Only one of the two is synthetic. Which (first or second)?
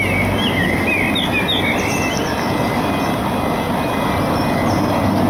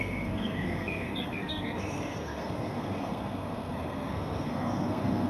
second